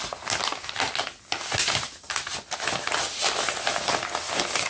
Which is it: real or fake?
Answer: real